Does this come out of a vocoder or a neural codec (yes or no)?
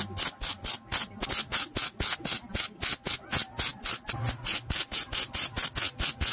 no